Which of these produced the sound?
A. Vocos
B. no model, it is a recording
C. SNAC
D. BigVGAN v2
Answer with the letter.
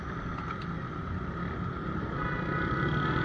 B